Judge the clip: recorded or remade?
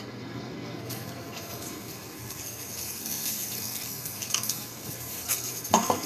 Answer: remade